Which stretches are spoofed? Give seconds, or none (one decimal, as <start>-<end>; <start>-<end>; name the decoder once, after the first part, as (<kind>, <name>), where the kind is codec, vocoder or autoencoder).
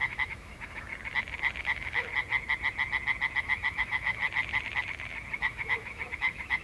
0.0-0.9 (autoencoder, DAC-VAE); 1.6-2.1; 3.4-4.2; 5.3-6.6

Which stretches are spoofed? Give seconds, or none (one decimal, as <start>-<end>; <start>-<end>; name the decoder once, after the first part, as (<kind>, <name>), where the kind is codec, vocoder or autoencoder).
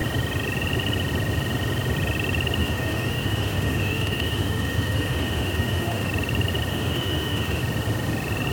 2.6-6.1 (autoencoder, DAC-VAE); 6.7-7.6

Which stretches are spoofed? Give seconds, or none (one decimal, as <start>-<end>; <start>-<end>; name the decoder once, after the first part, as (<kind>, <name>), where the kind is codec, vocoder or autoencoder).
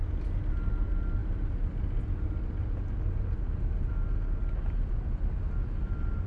none